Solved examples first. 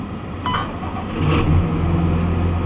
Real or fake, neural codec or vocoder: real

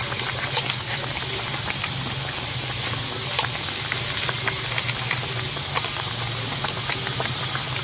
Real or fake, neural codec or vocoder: real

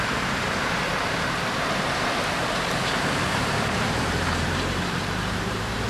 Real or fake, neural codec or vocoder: fake, vocoder, BigVGAN v2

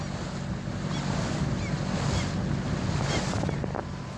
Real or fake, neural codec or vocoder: real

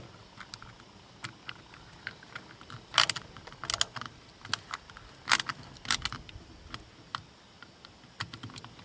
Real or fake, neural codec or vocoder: real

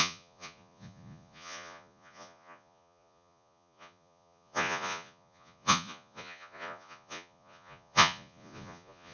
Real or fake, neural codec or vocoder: fake, vocoder, Vocos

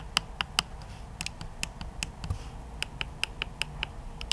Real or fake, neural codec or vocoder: real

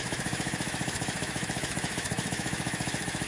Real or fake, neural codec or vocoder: fake, autoencoder, DAC-VAE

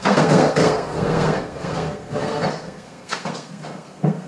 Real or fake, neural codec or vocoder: fake, codec, SNAC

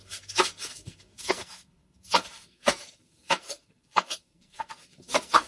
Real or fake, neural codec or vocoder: fake, codec, SNAC